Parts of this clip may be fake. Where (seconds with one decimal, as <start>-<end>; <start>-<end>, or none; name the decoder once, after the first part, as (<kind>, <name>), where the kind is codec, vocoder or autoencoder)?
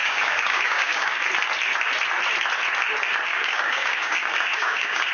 0.0-1.2 (codec, DAC); 3.3-5.1